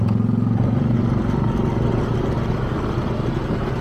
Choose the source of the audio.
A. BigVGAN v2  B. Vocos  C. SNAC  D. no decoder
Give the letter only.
D